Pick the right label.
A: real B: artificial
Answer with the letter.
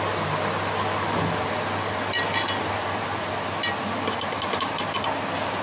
A